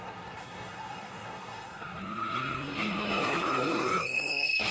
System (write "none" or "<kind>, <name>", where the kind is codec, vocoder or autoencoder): codec, SNAC